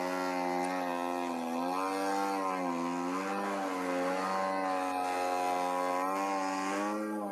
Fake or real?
real